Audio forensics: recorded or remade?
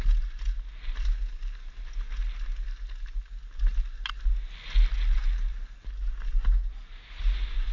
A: recorded